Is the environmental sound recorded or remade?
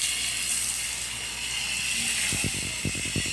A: recorded